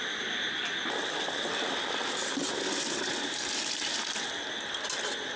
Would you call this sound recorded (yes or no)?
yes